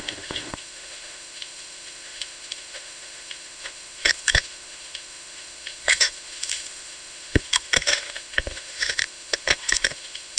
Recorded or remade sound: remade